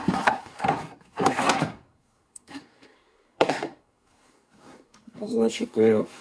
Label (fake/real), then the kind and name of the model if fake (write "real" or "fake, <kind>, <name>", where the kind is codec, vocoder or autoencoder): fake, codec, SNAC